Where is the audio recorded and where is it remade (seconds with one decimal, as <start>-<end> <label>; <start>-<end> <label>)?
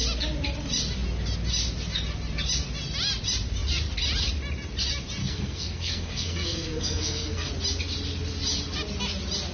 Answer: 0.0-5.2 recorded; 5.2-7.5 remade; 7.5-9.5 recorded